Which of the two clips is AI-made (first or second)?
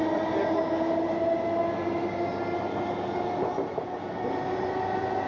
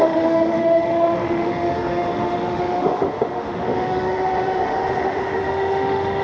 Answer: second